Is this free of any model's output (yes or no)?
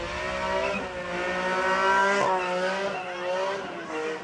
yes